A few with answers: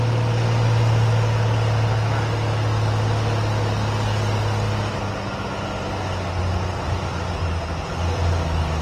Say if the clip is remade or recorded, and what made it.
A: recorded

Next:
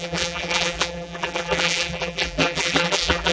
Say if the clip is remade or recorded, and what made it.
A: remade, vocoder, BigVGAN v2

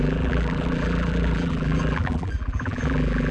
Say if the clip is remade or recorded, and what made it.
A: remade, vocoder, BigVGAN v2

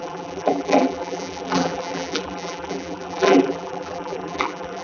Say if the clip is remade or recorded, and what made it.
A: remade, vocoder, BigVGAN v2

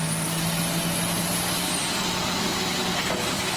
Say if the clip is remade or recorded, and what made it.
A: recorded